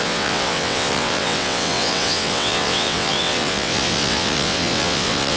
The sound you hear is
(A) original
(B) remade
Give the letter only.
B